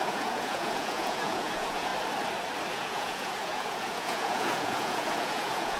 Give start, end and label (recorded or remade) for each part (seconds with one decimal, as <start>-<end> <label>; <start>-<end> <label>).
0.0-1.9 remade; 1.9-2.7 recorded; 2.7-5.8 remade